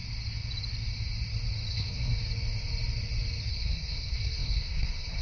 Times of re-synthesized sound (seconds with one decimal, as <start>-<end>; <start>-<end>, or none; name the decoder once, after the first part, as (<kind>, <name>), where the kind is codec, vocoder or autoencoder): 1.7-2.2 (codec, SNAC); 3.5-5.2